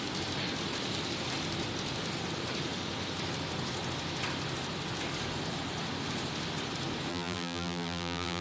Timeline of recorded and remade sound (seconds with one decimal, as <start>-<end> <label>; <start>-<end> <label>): 0.0-7.1 recorded; 7.1-8.4 remade